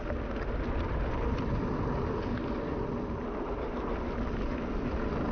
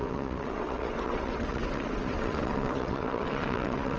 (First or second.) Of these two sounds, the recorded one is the first